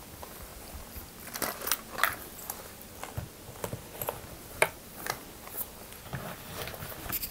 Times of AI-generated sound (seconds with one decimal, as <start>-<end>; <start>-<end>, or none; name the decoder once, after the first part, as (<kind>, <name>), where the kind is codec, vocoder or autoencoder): 0.0-0.5 (vocoder, BigVGAN v2); 4.5-6.1; 6.7-7.3